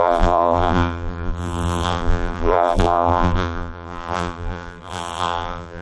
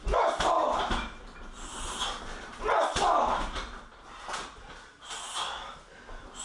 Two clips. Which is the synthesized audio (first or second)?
first